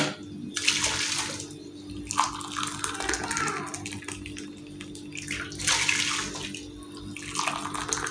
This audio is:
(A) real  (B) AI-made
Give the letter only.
A